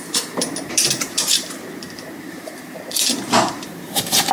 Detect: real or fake fake